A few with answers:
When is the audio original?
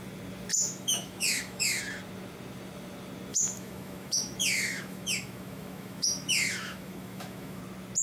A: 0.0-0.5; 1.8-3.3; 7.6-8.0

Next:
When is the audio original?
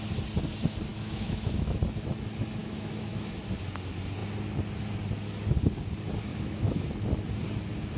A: 0.0-0.9; 1.8-2.6; 3.4-6.3; 6.9-8.0